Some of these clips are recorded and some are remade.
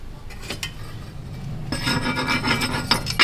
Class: recorded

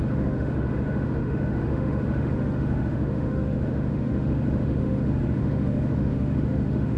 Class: remade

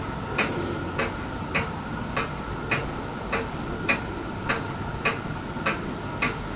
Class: recorded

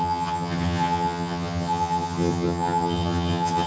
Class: remade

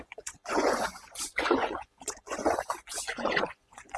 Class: remade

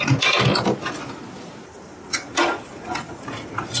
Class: recorded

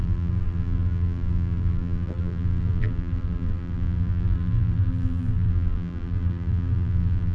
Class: remade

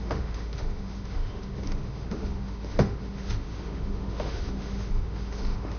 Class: remade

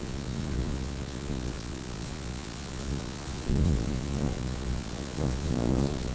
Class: remade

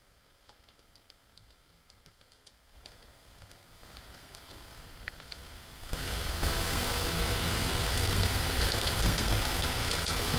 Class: remade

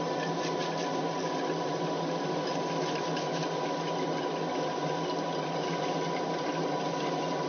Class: recorded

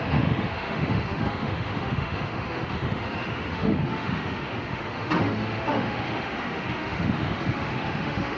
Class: remade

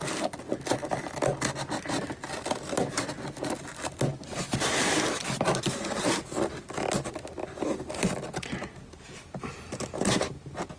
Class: recorded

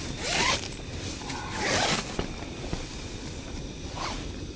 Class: recorded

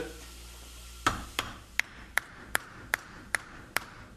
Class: recorded